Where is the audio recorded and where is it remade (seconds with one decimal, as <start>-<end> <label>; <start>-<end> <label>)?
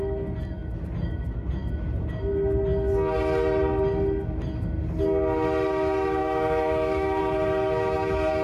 0.0-6.2 recorded; 6.2-7.2 remade; 7.2-8.4 recorded